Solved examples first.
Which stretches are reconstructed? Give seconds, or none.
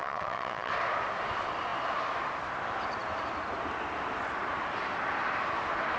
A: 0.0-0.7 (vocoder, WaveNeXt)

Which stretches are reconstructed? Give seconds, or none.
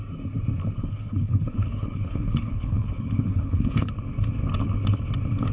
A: 0.8-3.9 (codec, HILCodec)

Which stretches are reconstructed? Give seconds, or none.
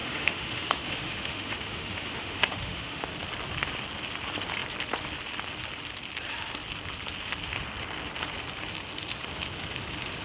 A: 0.0-3.1 (autoencoder, DAC-VAE)